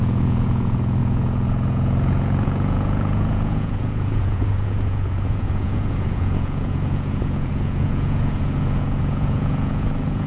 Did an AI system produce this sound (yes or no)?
yes